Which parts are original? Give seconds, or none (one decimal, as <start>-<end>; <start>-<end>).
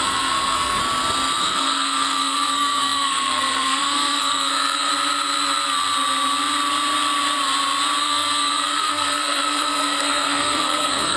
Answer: 0.8-1.4; 4.9-8.0